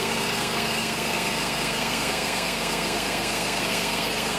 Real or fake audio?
fake